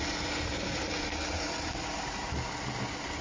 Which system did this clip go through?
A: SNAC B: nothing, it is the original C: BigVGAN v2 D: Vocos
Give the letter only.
B